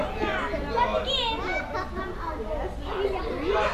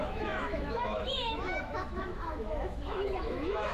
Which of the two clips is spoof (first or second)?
second